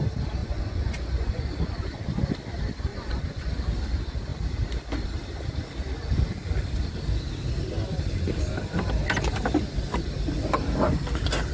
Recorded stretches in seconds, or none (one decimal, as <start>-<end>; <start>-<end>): 0.0-0.4; 1.5-2.9; 3.5-11.5